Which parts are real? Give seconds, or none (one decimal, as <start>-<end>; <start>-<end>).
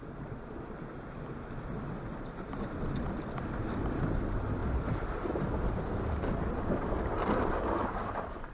0.0-4.6; 6.4-8.5